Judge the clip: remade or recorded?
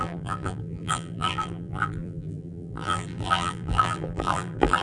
remade